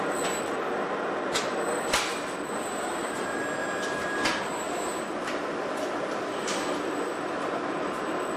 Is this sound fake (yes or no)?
no